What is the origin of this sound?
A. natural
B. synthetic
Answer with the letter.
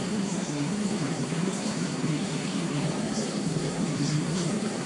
B